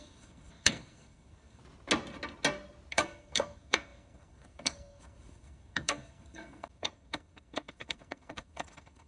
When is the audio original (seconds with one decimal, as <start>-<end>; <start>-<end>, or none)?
1.6-2.9